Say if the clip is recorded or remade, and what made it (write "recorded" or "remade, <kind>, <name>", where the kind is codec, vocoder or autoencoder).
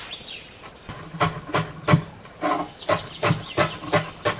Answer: recorded